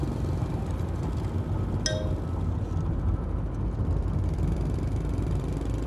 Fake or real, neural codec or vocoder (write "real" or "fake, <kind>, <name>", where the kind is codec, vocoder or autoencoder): real